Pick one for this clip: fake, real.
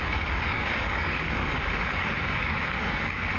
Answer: fake